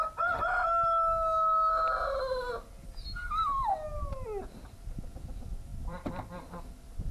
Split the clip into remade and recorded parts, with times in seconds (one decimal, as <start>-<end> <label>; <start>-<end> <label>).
0.0-5.7 recorded; 5.7-6.6 remade; 6.6-7.1 recorded

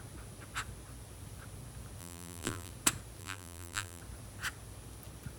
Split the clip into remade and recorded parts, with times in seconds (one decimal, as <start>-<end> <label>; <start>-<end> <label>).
0.0-2.0 recorded; 2.0-2.7 remade; 2.7-3.2 recorded; 3.2-4.0 remade; 4.0-5.4 recorded

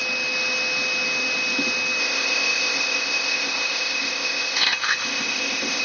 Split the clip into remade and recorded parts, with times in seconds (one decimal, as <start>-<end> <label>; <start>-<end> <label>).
0.0-2.0 recorded; 2.0-5.8 remade

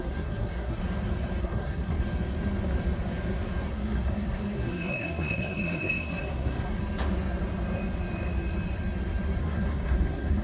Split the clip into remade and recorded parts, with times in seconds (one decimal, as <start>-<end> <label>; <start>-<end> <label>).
0.0-0.8 remade; 0.8-1.4 recorded; 1.4-2.0 remade; 2.0-3.7 recorded; 3.7-6.8 remade; 6.8-9.4 recorded; 9.4-10.4 remade

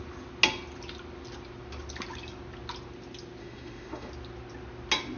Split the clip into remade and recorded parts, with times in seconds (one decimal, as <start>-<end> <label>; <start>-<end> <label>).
0.0-3.4 recorded; 3.4-4.1 remade; 4.1-5.2 recorded

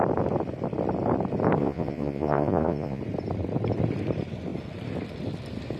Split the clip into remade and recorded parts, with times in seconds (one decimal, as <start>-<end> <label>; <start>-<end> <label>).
0.0-1.6 recorded; 1.6-3.0 remade; 3.0-5.8 recorded

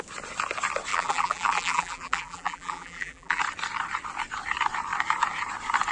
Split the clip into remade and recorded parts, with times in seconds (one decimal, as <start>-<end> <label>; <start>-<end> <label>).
0.0-0.9 recorded; 0.9-3.4 remade; 3.4-5.9 recorded